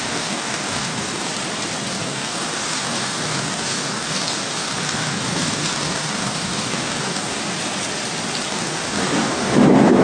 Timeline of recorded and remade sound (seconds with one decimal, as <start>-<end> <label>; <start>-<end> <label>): 0.0-1.3 remade; 1.3-1.9 recorded; 1.9-7.4 remade; 7.4-8.5 recorded; 8.5-10.0 remade